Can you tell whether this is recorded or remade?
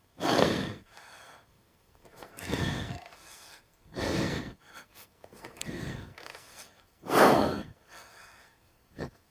remade